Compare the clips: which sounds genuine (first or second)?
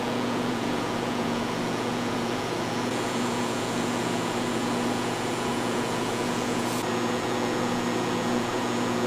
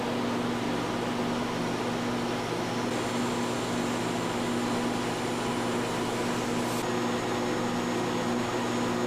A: second